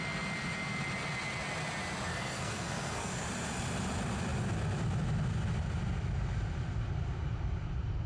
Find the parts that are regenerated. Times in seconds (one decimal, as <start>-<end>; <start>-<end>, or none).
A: 2.1-3.1